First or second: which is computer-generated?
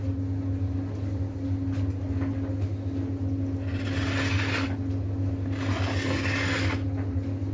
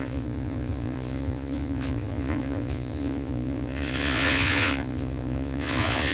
second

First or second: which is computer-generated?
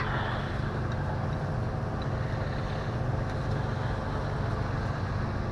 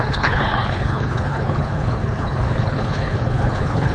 second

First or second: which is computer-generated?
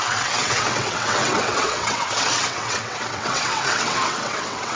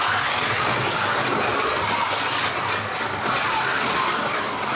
first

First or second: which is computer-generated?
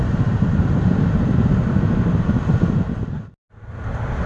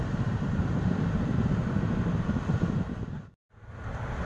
second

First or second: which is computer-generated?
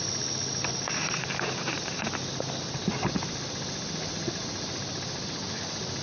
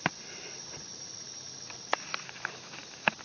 second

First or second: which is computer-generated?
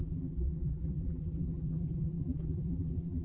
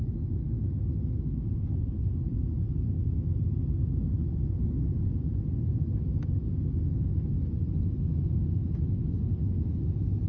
first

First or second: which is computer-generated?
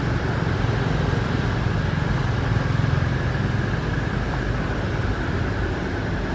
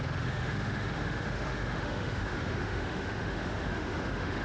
second